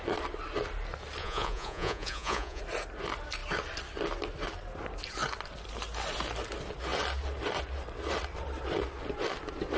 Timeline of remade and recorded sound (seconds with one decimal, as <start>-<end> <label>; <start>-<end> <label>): 0.0-1.2 recorded; 1.2-2.6 remade; 2.6-9.8 recorded

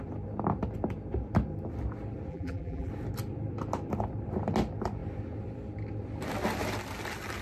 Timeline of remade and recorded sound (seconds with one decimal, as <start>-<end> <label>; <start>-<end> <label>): 0.0-2.3 recorded; 2.3-2.9 remade; 2.9-7.4 recorded

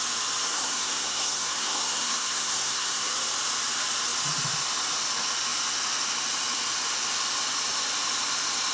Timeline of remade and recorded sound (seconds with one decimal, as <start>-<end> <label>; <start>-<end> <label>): 0.0-0.4 recorded; 0.4-3.1 remade; 3.1-8.7 recorded